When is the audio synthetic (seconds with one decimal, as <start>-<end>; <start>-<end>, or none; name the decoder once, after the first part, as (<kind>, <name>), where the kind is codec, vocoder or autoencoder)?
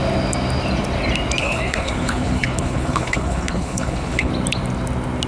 1.4-4.3 (codec, HILCodec)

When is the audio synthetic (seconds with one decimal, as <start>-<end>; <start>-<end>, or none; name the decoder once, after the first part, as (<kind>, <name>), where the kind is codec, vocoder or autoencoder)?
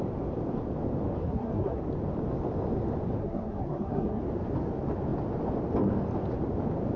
1.2-1.8 (codec, SNAC); 3.2-4.2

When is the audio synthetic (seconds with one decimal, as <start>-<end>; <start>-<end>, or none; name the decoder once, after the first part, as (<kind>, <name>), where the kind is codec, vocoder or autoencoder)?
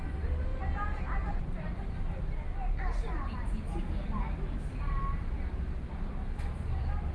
none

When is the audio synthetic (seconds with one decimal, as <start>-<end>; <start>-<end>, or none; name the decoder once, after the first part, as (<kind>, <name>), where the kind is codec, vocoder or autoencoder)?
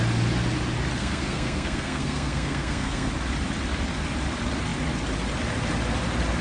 1.0-3.1 (codec, SNAC)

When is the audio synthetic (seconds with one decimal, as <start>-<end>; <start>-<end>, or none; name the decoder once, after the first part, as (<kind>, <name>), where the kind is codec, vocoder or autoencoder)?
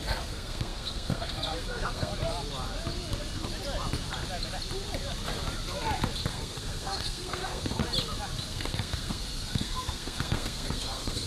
0.0-2.1 (codec, SNAC); 6.3-7.8; 8.5-11.3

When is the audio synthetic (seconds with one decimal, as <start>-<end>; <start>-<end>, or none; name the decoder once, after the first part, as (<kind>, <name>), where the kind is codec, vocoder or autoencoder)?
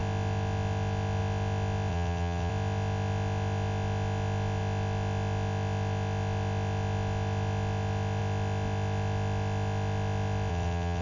1.9-2.5 (vocoder, WaveNeXt); 10.5-11.0